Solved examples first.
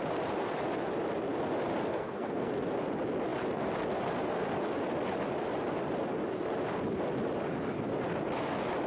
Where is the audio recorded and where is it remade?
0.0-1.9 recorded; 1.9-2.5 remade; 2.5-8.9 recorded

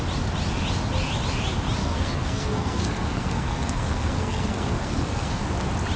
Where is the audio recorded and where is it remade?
0.0-1.8 recorded; 1.8-5.4 remade; 5.4-6.0 recorded